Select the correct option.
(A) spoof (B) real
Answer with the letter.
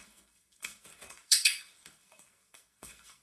A